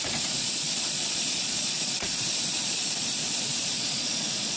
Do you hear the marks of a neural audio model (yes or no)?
yes